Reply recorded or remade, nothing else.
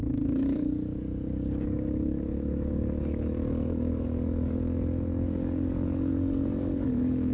remade